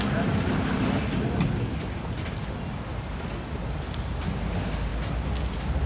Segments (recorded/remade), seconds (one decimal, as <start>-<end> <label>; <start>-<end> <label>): 0.0-5.9 recorded